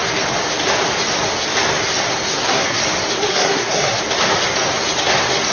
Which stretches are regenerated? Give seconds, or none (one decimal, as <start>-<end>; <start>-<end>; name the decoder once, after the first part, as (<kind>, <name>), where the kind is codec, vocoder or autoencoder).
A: 2.3-2.8 (codec, SNAC); 3.3-4.0